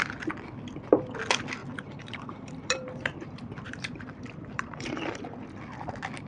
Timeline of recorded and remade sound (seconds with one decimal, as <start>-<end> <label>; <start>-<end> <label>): 0.0-1.6 recorded; 1.6-5.3 remade; 5.3-6.3 recorded